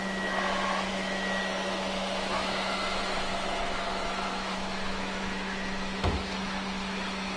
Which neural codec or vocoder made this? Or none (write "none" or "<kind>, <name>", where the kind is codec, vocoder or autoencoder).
autoencoder, DAC-VAE